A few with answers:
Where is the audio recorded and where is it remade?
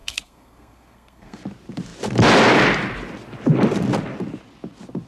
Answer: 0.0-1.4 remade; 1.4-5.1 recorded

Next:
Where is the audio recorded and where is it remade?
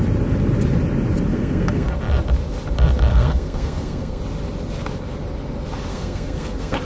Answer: 0.0-1.3 recorded; 1.3-1.9 remade; 1.9-3.1 recorded; 3.1-4.2 remade; 4.2-5.9 recorded; 5.9-6.8 remade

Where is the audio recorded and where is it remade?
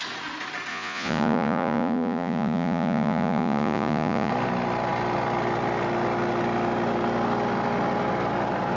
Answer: 0.0-0.7 recorded; 0.7-4.3 remade; 4.3-8.8 recorded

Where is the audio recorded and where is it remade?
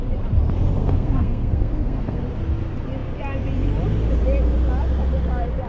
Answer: 0.0-0.8 recorded; 0.8-2.2 remade; 2.2-5.7 recorded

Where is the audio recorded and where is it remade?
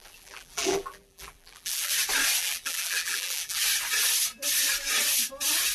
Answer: 0.0-1.9 remade; 1.9-2.4 recorded; 2.4-3.6 remade; 3.6-5.7 recorded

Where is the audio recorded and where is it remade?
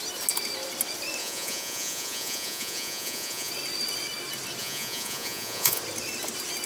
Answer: 0.0-1.2 recorded; 1.2-3.5 remade; 3.5-4.6 recorded; 4.6-5.8 remade; 5.8-6.7 recorded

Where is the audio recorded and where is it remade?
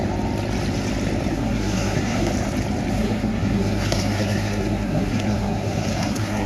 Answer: 0.0-1.3 recorded; 1.3-2.3 remade; 2.3-2.9 recorded; 2.9-6.5 remade